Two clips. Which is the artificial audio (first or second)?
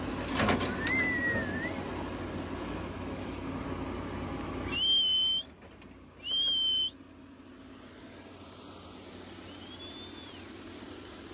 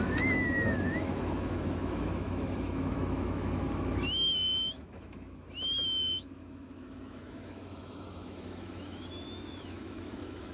second